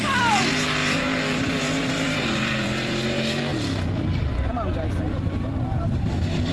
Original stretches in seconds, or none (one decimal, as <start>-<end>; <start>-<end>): 3.5-4.2